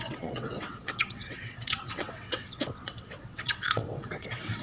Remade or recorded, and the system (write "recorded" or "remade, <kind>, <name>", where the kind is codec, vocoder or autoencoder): remade, vocoder, WaveNeXt